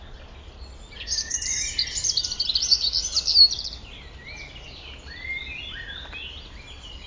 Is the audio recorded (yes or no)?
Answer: yes